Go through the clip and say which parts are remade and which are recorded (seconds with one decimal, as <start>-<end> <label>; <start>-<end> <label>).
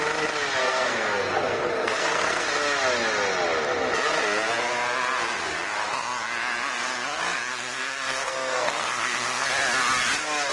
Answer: 0.0-0.6 recorded; 0.6-2.5 remade; 2.5-7.5 recorded; 7.5-9.5 remade; 9.5-10.5 recorded